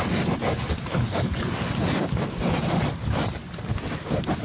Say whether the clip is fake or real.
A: real